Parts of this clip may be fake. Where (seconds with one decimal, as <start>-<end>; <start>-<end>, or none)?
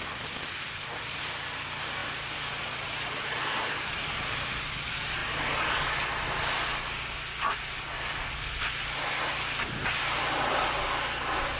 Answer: 2.0-4.6; 9.8-11.2